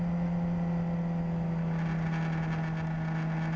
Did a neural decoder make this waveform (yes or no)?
no